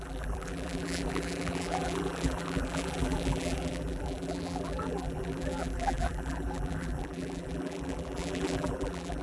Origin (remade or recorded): remade